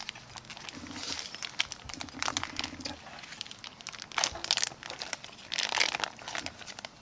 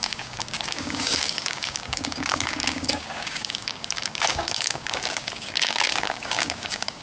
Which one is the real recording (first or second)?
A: first